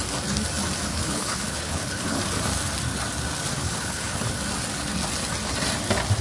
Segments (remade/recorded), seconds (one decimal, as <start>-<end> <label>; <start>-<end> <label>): 0.0-0.9 recorded; 0.9-2.2 remade; 2.2-3.6 recorded; 3.6-4.3 remade; 4.3-6.2 recorded